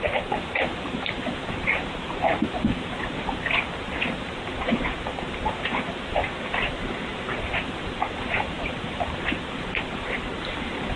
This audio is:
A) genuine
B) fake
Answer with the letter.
B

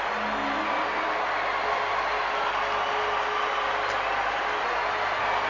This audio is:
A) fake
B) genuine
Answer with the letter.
B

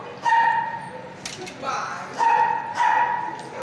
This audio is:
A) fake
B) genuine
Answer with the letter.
B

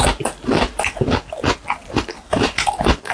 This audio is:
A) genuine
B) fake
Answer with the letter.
A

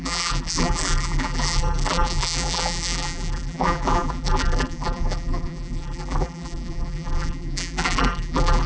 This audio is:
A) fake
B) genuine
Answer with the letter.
A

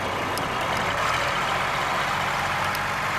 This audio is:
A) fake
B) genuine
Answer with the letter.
B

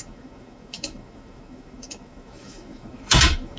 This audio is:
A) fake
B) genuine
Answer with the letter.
A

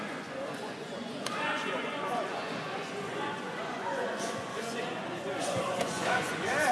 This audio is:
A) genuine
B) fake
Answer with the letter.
B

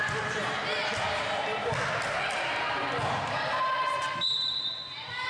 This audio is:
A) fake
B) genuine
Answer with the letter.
B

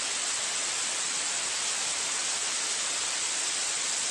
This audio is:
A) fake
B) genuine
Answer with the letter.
B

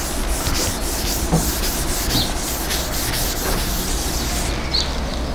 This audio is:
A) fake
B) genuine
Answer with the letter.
B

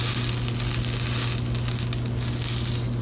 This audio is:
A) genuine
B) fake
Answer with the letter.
A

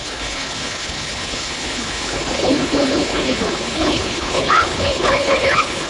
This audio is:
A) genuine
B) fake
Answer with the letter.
B